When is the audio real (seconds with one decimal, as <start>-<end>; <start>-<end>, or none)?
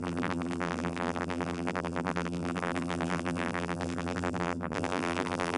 none